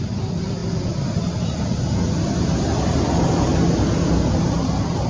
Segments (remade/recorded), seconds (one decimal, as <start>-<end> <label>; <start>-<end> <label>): 0.0-5.1 recorded